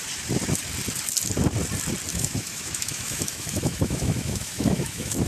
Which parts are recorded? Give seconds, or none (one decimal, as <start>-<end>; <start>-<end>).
0.0-2.1